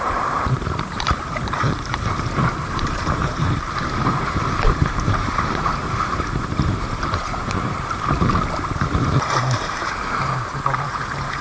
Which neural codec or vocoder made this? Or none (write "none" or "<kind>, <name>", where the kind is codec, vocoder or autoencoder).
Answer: vocoder, BigVGAN v2